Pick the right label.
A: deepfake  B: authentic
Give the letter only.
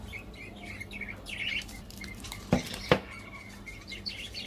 B